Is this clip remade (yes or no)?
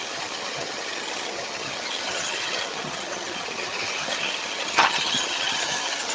yes